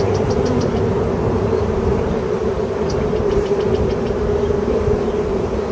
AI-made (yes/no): yes